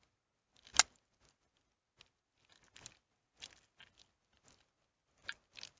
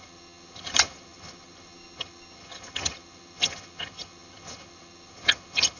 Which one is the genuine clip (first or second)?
first